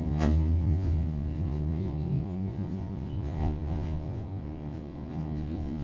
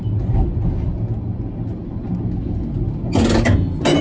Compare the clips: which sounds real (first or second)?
second